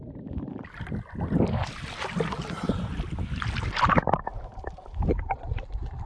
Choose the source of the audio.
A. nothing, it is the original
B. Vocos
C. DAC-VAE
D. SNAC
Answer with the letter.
A